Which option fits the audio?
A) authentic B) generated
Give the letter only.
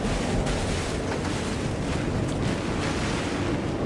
A